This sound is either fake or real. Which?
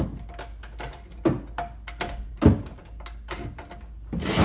real